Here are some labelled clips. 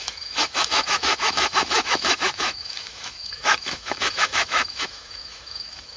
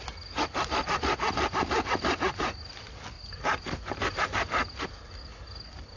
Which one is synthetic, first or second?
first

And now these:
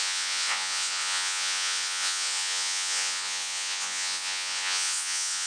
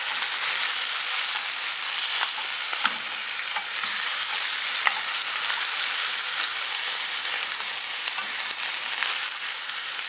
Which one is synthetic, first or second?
first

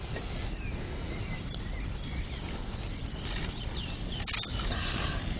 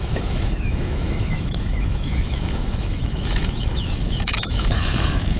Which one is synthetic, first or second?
second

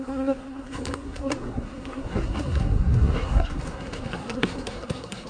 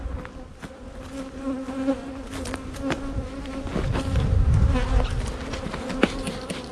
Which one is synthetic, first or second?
first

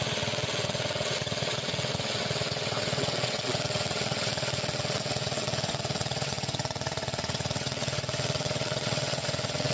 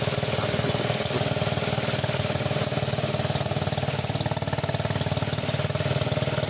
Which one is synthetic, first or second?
first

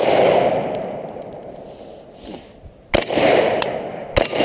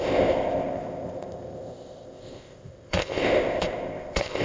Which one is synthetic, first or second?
second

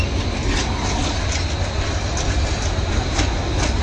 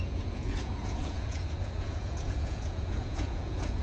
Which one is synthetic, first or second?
second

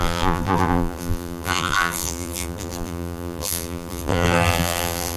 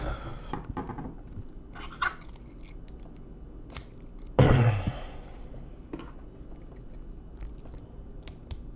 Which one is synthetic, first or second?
first